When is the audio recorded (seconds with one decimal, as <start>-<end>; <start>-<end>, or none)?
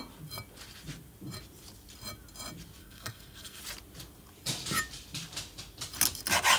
0.0-2.8; 3.6-6.6